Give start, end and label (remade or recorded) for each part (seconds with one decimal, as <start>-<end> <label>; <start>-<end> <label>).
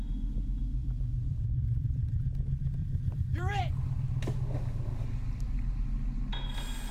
0.0-0.8 recorded; 0.8-2.2 remade; 2.2-2.8 recorded; 2.8-3.6 remade; 3.6-5.2 recorded; 5.2-5.8 remade; 5.8-6.9 recorded